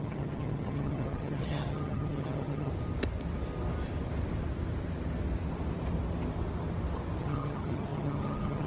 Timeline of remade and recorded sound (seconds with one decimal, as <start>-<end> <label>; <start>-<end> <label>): 0.0-2.7 remade; 2.7-7.2 recorded; 7.2-8.7 remade

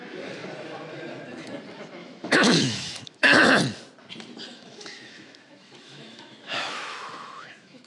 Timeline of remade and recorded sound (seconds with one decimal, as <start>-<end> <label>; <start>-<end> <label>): 0.0-2.0 recorded; 2.0-3.6 remade; 3.6-4.5 recorded; 4.5-7.9 remade

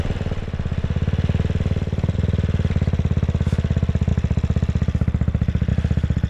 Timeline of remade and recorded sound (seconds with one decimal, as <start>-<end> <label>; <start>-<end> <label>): 0.0-6.3 recorded

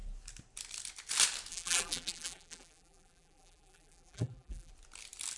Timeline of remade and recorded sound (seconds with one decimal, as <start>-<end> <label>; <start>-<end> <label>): 0.0-1.5 recorded; 1.5-4.7 remade; 4.7-5.4 recorded

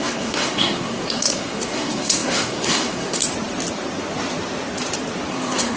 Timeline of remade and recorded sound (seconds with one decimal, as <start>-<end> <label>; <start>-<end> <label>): 0.0-3.2 remade; 3.2-5.3 recorded; 5.3-5.8 remade

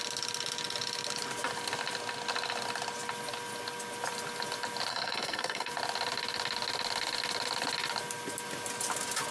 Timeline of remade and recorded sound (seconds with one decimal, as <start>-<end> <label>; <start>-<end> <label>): 0.0-4.9 recorded; 4.9-5.7 remade; 5.7-9.3 recorded

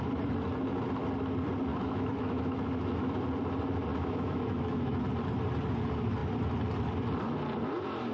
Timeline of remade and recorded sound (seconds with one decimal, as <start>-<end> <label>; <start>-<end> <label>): 0.0-1.7 recorded; 1.7-3.2 remade; 3.2-3.9 recorded; 3.9-5.0 remade; 5.0-8.1 recorded